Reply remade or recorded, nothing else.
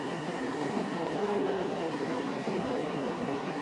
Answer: remade